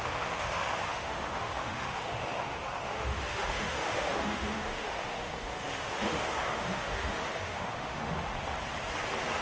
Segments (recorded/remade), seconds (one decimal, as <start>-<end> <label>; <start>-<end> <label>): 0.0-8.3 remade; 8.3-9.4 recorded